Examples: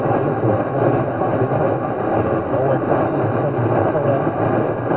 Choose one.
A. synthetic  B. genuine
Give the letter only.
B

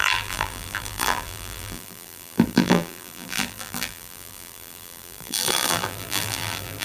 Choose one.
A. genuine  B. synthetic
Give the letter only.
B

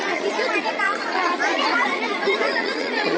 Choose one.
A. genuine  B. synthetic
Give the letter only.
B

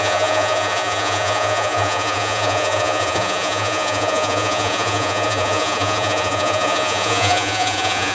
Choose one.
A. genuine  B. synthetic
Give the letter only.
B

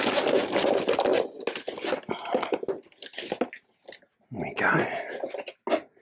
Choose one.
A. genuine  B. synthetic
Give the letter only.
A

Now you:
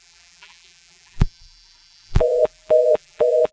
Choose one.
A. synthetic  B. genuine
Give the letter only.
A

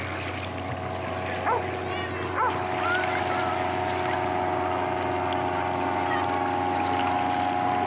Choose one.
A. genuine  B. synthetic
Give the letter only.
A